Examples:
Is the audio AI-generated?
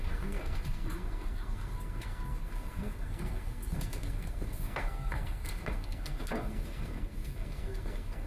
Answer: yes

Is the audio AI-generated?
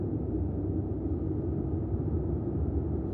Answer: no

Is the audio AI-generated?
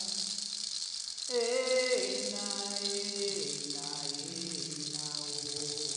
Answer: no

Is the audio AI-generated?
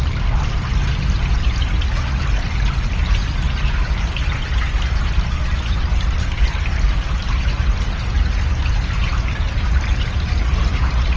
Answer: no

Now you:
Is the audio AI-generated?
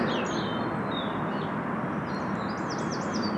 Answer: no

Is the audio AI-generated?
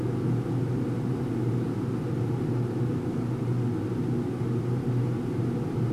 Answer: no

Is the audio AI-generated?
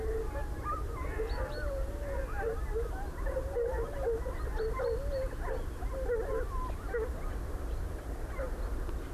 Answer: no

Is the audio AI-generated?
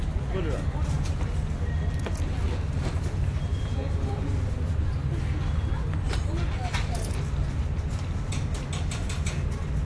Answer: no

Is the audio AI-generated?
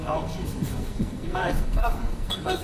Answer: yes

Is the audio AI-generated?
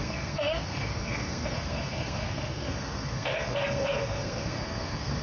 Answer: yes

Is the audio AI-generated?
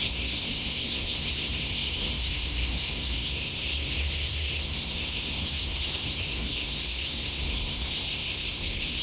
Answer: yes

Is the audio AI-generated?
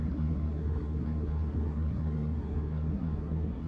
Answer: yes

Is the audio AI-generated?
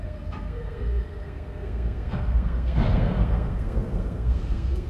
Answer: yes